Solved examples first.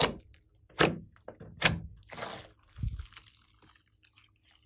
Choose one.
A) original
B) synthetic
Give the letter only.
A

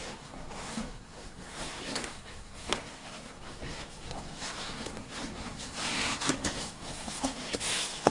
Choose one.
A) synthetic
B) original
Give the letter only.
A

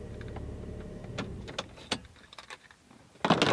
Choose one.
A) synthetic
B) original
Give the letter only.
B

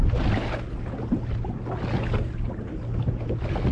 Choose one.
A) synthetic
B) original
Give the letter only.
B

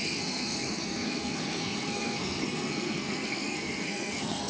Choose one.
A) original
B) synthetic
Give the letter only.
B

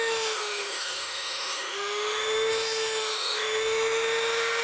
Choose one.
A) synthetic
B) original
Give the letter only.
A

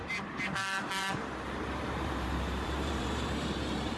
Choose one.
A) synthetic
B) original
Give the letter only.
A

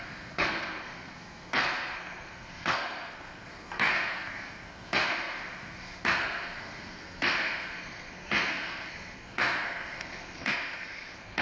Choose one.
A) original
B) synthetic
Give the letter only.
B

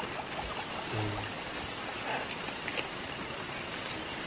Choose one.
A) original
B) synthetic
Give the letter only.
A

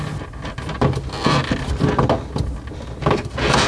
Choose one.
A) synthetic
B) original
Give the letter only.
B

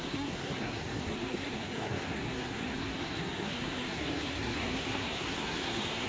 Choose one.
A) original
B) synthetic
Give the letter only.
B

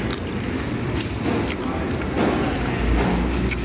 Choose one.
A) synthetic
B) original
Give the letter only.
B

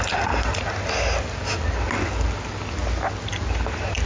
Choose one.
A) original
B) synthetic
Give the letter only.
A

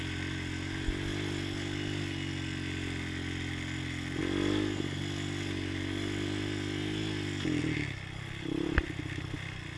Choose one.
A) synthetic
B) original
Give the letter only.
B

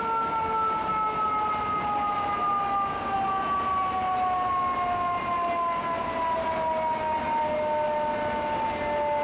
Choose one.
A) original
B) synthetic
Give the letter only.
A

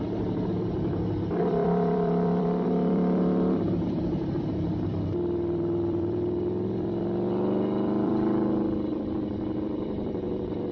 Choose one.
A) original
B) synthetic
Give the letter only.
B